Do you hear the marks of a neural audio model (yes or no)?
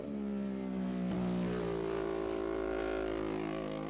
no